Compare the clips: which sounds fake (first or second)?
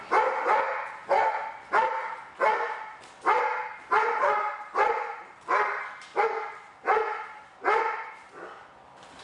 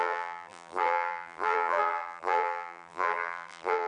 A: second